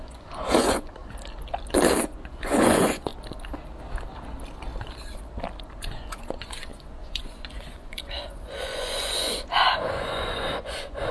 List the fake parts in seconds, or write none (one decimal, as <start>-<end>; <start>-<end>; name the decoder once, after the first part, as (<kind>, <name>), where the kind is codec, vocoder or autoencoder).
0.0-1.0 (vocoder, Vocos); 2.0-3.1; 5.6-11.1